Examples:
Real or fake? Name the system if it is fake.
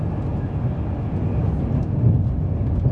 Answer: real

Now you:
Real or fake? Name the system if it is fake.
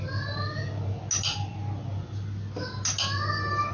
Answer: real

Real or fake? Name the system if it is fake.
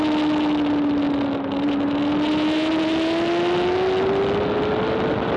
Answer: real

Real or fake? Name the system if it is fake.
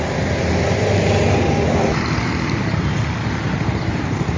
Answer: real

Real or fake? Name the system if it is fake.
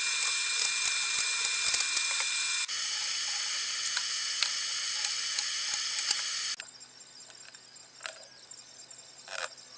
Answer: real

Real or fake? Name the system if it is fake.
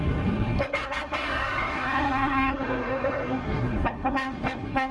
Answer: fake, codec, SNAC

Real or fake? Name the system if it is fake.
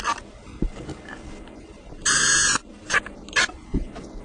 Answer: real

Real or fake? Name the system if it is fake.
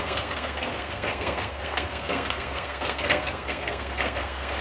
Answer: fake, codec, SNAC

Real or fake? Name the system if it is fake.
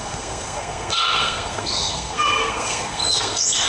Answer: fake, codec, SNAC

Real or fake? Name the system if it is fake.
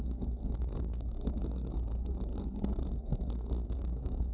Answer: fake, codec, SNAC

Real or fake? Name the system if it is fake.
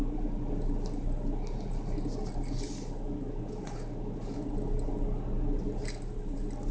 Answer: real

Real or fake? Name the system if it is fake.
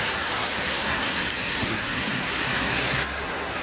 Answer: fake, codec, SNAC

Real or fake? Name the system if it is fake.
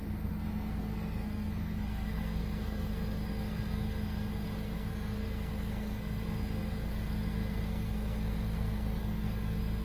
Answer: fake, codec, SNAC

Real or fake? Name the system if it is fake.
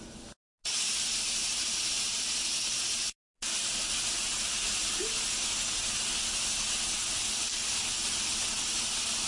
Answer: real